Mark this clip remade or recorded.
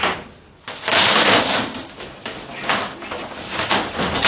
recorded